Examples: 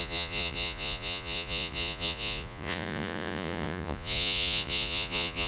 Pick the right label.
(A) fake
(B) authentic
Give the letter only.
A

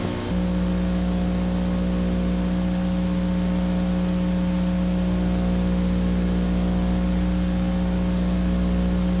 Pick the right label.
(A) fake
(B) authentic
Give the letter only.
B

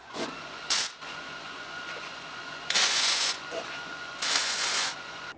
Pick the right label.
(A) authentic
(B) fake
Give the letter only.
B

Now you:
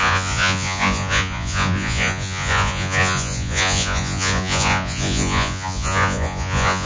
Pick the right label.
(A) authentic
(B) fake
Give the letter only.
B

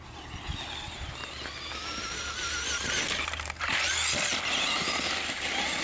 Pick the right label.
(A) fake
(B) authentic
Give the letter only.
B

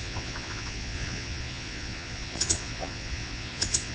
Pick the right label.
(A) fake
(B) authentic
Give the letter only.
A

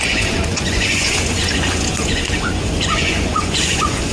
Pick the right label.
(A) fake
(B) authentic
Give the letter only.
A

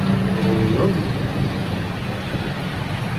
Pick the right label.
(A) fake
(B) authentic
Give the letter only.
B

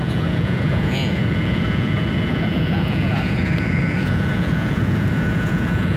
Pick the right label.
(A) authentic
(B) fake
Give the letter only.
B